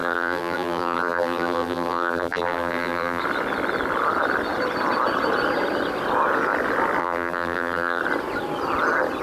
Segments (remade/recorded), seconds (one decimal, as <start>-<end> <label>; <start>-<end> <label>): 0.0-3.2 remade; 3.2-7.0 recorded; 7.0-8.0 remade; 8.0-9.2 recorded